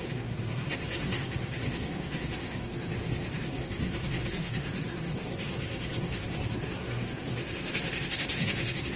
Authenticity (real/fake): fake